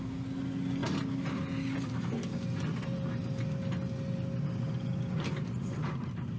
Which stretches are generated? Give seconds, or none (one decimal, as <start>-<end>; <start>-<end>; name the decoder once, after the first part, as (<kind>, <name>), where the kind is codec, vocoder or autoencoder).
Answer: none

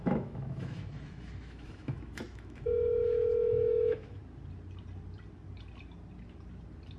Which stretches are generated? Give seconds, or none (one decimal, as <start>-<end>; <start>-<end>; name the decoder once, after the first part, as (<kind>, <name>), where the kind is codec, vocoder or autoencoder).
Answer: 0.0-4.2 (autoencoder, DAC-VAE)

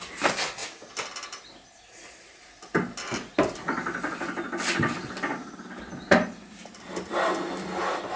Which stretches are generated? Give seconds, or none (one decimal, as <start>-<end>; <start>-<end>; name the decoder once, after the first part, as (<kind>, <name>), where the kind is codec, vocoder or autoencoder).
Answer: none